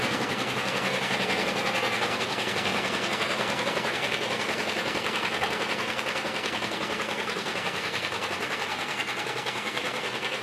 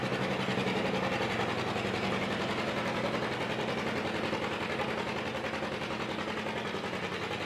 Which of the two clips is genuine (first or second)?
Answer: second